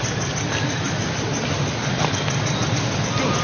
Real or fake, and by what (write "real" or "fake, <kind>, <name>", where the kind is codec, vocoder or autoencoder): real